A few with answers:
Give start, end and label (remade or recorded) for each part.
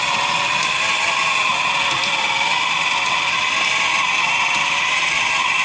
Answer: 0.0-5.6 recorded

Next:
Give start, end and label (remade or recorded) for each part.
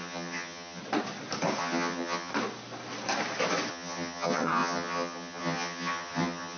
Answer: 0.0-0.8 remade; 0.8-1.6 recorded; 1.6-2.3 remade; 2.3-3.7 recorded; 3.7-6.6 remade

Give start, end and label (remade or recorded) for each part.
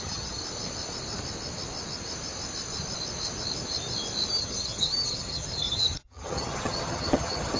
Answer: 0.0-0.4 remade; 0.4-4.4 recorded; 4.4-7.6 remade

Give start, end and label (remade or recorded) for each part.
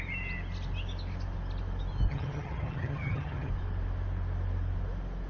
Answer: 0.0-2.1 recorded; 2.1-3.5 remade; 3.5-5.3 recorded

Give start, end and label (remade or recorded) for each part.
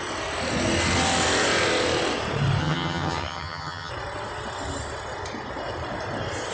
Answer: 0.0-2.6 recorded; 2.6-3.9 remade; 3.9-6.5 recorded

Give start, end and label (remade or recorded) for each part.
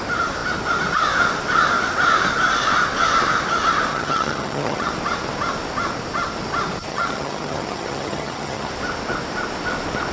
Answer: 0.0-3.9 recorded; 3.9-4.9 remade; 4.9-6.9 recorded; 6.9-8.7 remade; 8.7-10.1 recorded